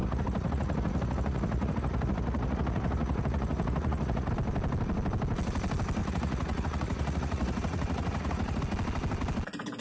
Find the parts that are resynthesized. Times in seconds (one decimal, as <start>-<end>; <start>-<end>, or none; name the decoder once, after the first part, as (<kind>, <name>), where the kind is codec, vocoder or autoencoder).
0.0-4.3 (vocoder, Vocos); 6.0-8.6